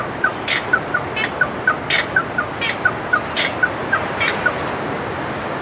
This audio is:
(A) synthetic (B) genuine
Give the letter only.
B